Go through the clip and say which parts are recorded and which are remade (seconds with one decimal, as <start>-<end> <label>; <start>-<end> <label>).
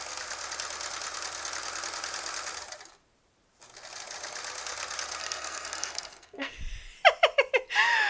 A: 0.0-5.2 recorded; 5.2-6.6 remade; 6.6-8.1 recorded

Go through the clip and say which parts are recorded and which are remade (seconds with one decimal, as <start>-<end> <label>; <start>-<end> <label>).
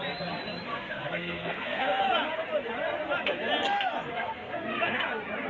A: 0.0-0.7 recorded; 0.7-2.0 remade; 2.0-4.1 recorded; 4.1-5.0 remade; 5.0-5.5 recorded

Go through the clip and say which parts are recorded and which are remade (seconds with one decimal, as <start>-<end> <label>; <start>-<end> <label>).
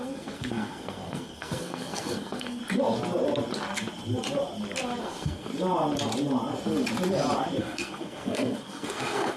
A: 0.0-2.6 remade; 2.6-5.0 recorded; 5.0-5.5 remade; 5.5-7.6 recorded; 7.6-9.4 remade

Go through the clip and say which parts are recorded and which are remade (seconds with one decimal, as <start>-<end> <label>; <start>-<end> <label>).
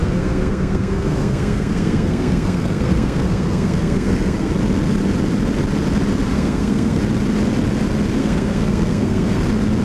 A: 0.0-4.5 remade; 4.5-6.3 recorded; 6.3-7.0 remade; 7.0-8.2 recorded; 8.2-9.4 remade; 9.4-9.8 recorded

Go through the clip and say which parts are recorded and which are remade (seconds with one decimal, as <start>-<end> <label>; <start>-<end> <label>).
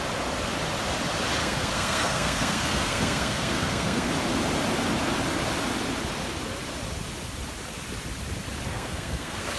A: 0.0-1.4 recorded; 1.4-4.1 remade; 4.1-8.7 recorded; 8.7-9.6 remade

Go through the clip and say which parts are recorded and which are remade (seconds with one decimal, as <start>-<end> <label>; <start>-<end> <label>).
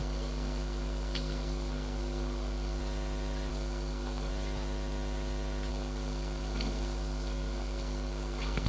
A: 0.0-2.8 remade; 2.8-3.5 recorded; 3.5-4.3 remade; 4.3-5.7 recorded; 5.7-8.7 remade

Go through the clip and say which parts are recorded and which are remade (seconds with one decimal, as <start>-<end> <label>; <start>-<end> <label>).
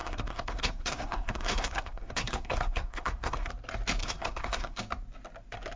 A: 0.0-3.5 remade; 3.5-4.0 recorded; 4.0-4.8 remade; 4.8-5.8 recorded